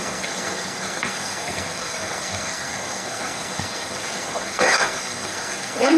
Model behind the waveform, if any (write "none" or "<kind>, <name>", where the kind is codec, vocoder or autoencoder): codec, SNAC